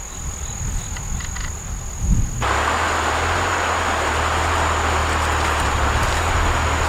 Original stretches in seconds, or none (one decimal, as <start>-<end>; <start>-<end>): 0.0-6.9